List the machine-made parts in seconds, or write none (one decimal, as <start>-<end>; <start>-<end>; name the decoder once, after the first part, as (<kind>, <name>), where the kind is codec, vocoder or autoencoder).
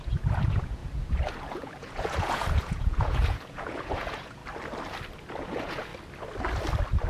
0.0-4.4 (vocoder, Vocos); 5.3-5.9